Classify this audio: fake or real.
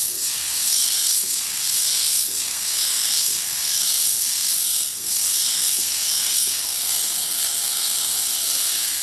fake